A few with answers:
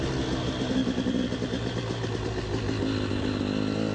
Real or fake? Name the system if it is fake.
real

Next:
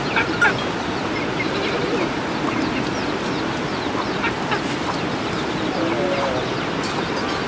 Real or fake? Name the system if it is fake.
real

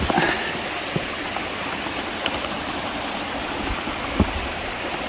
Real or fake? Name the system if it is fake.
real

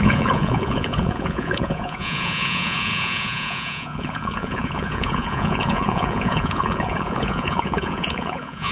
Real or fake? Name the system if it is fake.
fake, vocoder, Vocos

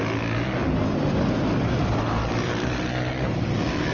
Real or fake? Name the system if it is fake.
real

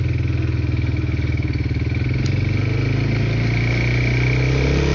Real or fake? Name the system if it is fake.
real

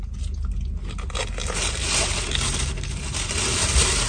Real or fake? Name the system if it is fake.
real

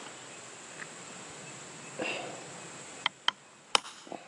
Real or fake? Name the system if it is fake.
real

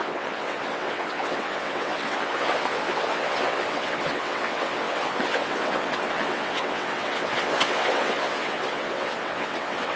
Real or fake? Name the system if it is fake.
fake, vocoder, WaveNeXt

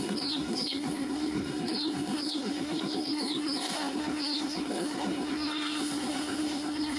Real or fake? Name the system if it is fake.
fake, codec, SNAC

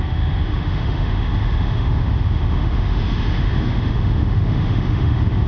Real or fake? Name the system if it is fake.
fake, autoencoder, DAC-VAE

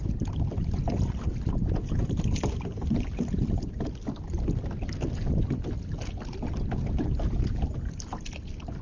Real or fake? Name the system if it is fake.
real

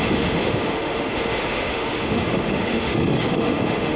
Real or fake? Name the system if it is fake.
fake, autoencoder, DAC-VAE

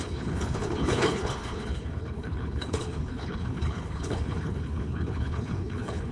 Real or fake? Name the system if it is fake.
fake, codec, HILCodec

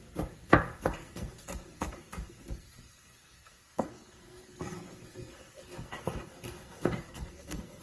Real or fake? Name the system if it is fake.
fake, codec, SNAC